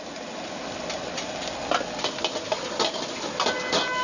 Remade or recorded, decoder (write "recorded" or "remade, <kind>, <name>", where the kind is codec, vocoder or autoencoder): recorded